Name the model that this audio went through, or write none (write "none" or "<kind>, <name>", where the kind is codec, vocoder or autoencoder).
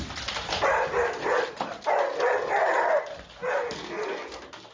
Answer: none